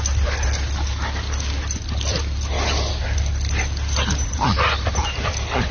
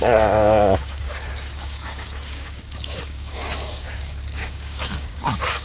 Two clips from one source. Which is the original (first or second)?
first